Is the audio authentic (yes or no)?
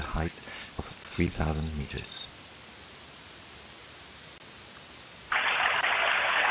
yes